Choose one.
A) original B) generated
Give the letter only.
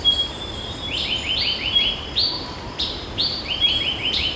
B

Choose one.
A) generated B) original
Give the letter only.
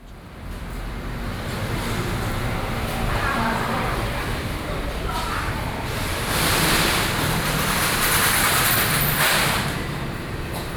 A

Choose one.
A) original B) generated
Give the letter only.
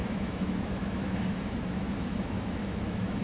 B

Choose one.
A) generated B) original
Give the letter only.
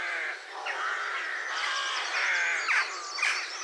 B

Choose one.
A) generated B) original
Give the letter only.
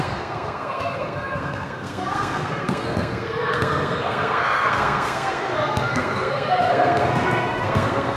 A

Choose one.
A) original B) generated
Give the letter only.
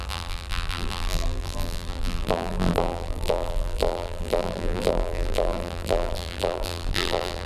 B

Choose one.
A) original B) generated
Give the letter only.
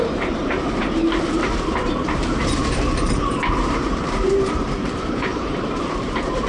B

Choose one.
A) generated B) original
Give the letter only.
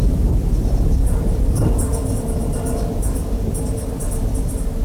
B